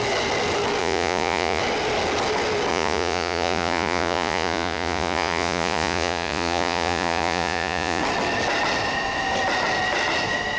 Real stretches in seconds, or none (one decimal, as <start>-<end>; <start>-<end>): 0.0-0.8; 1.6-2.7; 8.0-10.6